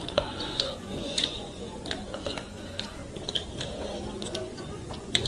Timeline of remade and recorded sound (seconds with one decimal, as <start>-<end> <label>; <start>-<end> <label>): 0.0-3.0 remade; 3.0-4.1 recorded; 4.1-5.3 remade